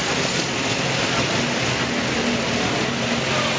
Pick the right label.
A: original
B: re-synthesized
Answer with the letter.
A